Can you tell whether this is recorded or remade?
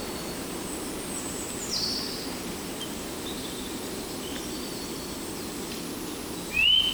recorded